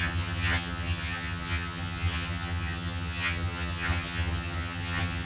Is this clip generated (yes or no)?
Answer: yes